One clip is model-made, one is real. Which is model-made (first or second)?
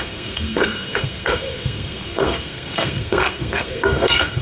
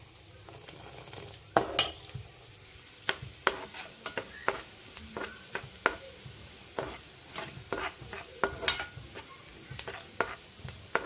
first